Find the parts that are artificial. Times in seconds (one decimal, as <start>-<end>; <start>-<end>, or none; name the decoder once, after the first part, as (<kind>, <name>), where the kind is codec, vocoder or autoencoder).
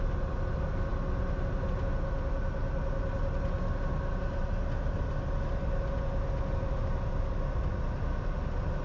none